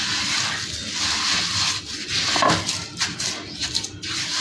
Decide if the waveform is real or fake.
real